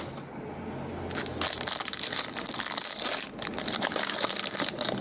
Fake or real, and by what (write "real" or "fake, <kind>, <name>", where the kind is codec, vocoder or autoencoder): real